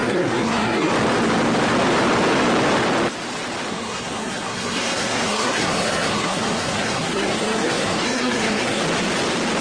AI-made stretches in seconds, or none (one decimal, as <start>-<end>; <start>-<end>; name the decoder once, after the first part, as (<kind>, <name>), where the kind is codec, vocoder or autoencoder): 0.0-0.9 (codec, SNAC); 3.7-8.8